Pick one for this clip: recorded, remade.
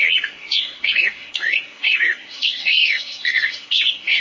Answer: remade